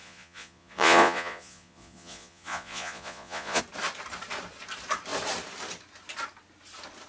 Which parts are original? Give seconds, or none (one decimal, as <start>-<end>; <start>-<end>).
3.6-7.1